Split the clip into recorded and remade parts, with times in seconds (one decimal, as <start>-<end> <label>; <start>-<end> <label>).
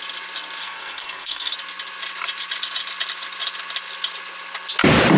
0.0-0.6 recorded; 0.6-1.5 remade; 1.5-5.2 recorded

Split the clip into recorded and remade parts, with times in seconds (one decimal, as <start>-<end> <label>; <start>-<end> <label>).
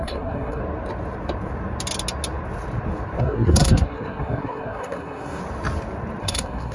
0.0-0.6 remade; 0.6-3.2 recorded; 3.2-5.4 remade; 5.4-6.2 recorded; 6.2-6.7 remade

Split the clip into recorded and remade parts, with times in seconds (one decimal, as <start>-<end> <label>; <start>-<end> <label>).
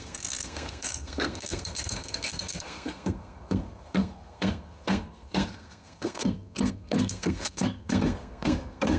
0.0-9.0 remade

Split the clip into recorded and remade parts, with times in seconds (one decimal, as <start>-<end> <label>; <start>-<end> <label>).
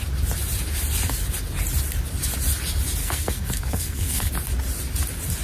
0.0-3.0 recorded; 3.0-4.3 remade; 4.3-5.4 recorded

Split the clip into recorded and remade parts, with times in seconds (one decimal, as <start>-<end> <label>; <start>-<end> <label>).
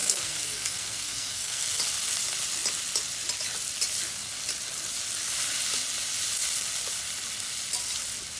0.0-1.8 remade; 1.8-8.4 recorded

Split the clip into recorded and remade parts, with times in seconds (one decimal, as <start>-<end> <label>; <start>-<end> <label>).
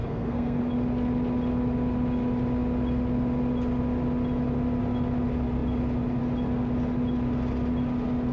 0.0-0.6 remade; 0.6-8.3 recorded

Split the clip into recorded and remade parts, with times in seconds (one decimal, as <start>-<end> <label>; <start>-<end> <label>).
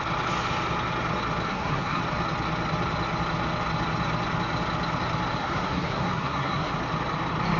0.0-1.5 recorded; 1.5-2.0 remade; 2.0-5.4 recorded; 5.4-6.7 remade; 6.7-7.6 recorded